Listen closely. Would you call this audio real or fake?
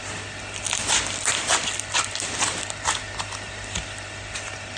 real